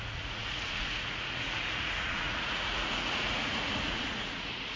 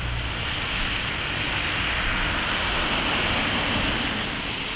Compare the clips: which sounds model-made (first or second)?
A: first